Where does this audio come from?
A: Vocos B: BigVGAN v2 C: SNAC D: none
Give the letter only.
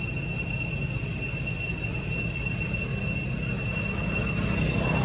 D